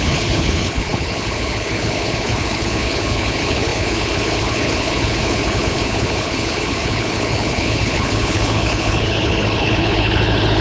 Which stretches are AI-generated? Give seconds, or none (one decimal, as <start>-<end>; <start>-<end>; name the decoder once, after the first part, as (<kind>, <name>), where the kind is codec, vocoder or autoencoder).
0.0-10.6 (codec, HILCodec)